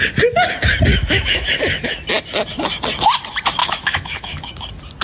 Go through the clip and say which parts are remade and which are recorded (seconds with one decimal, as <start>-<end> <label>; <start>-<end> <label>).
0.0-0.9 recorded; 0.9-2.1 remade; 2.1-3.6 recorded; 3.6-4.5 remade; 4.5-5.0 recorded